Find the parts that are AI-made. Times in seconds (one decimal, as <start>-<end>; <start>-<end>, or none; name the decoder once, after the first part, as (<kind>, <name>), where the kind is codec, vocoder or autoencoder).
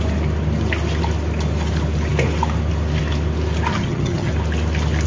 3.7-4.3 (vocoder, HiFi-GAN)